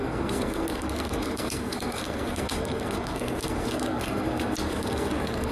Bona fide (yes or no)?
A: no